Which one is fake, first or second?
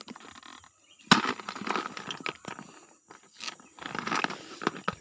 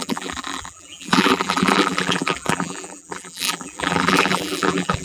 second